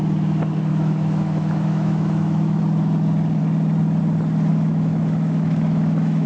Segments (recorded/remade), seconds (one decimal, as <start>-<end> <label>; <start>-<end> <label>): 0.0-0.7 recorded; 0.7-2.6 remade; 2.6-4.5 recorded; 4.5-6.3 remade